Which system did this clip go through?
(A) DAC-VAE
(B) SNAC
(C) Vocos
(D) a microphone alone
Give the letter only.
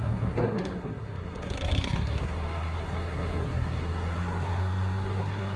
B